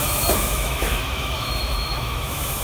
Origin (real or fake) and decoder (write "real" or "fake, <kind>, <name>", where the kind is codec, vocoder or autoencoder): fake, autoencoder, DAC-VAE